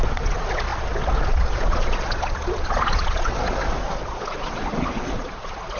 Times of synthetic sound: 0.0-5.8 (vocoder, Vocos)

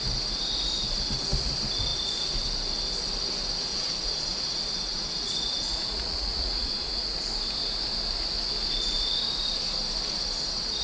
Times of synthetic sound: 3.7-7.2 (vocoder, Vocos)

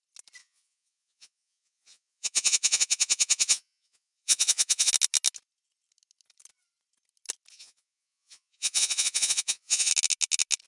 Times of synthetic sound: 0.4-4.9 (vocoder, Vocos); 7.5-9.9

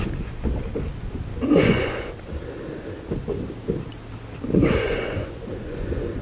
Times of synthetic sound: 1.3-2.1 (vocoder, Vocos); 4.5-6.2

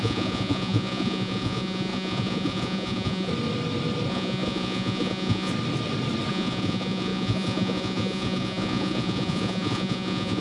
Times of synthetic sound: 0.0-3.3 (vocoder, Vocos); 4.1-5.5; 6.3-10.4

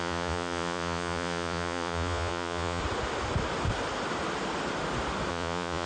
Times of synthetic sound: 0.0-2.8 (vocoder, Vocos); 5.3-5.9